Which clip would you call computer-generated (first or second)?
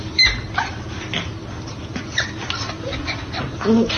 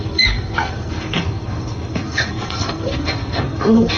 second